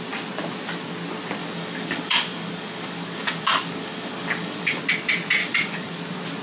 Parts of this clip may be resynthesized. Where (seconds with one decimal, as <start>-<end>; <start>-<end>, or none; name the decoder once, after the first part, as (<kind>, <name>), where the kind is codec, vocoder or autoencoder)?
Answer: 1.4-4.8 (codec, DAC); 5.4-6.0